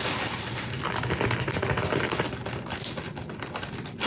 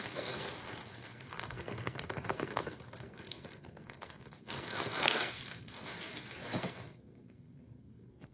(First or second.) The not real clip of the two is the second